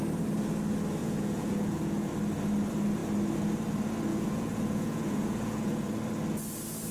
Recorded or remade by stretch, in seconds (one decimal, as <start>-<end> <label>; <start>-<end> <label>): 0.0-1.0 recorded; 1.0-2.1 remade; 2.1-4.1 recorded; 4.1-6.0 remade; 6.0-6.9 recorded